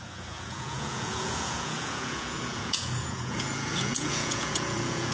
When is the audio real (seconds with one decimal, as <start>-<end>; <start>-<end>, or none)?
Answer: none